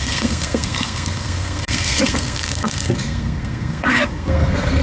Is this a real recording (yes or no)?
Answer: no